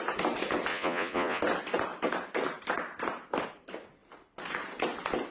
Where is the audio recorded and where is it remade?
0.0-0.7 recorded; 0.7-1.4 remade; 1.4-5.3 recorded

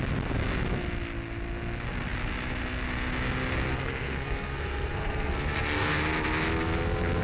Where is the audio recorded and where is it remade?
0.0-3.7 recorded; 3.7-5.9 remade; 5.9-7.2 recorded

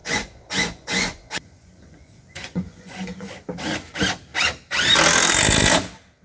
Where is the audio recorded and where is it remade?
0.0-3.3 remade; 3.3-6.2 recorded

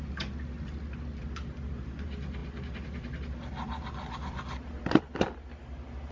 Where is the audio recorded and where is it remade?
0.0-6.1 recorded

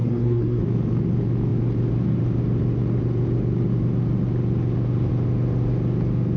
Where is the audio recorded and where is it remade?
0.0-0.6 remade; 0.6-6.4 recorded

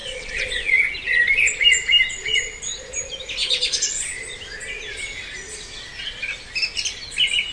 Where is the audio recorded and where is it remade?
0.0-0.8 remade; 0.8-3.4 recorded; 3.4-4.1 remade; 4.1-7.5 recorded